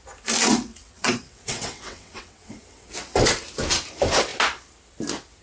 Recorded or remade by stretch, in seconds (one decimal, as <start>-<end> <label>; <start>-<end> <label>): 0.0-0.7 recorded; 0.7-2.9 remade; 2.9-5.4 recorded